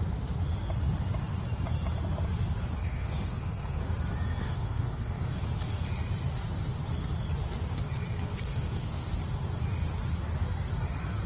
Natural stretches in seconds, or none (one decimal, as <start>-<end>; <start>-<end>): 0.0-2.8; 3.8-4.4; 5.4-8.5; 9.1-11.3